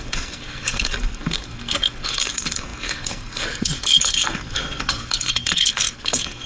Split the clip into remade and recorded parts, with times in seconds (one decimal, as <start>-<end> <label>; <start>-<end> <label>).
0.0-6.5 remade